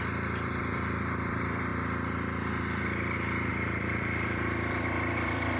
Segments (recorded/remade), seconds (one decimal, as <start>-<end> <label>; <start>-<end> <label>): 0.0-1.7 remade; 1.7-3.5 recorded; 3.5-5.6 remade